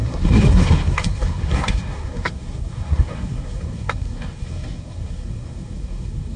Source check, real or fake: fake